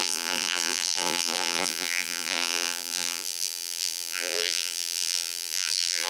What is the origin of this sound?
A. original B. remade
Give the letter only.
B